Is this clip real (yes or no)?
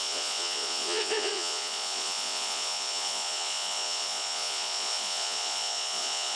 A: no